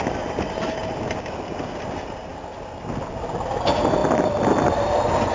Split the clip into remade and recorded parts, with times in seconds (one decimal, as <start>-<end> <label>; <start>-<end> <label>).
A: 0.0-5.3 recorded